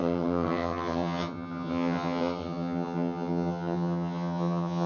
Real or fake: fake